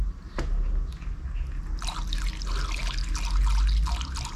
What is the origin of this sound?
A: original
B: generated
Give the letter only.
A